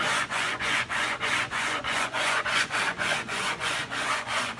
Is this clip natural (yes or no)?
no